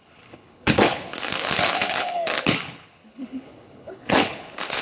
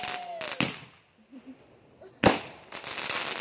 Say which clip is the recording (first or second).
second